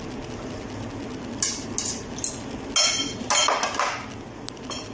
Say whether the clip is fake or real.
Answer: real